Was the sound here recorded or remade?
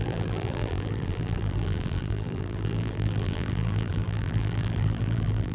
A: remade